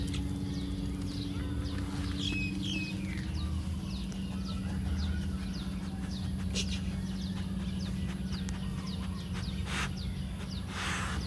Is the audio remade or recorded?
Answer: recorded